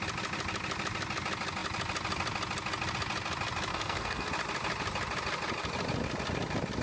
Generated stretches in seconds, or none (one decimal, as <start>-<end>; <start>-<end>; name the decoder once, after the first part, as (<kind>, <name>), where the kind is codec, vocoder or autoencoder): 3.7-4.3 (codec, SNAC)